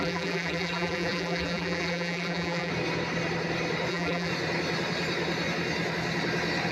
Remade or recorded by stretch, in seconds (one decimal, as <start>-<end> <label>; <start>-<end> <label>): 0.0-2.7 remade; 2.7-3.9 recorded; 3.9-4.3 remade; 4.3-6.7 recorded